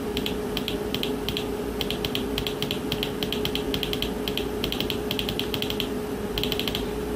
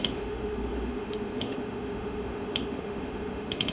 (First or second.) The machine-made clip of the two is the second